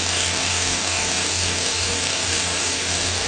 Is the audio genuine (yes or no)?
no